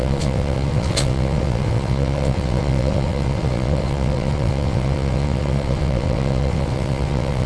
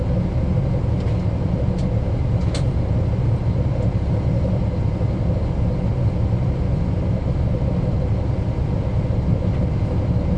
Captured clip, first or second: second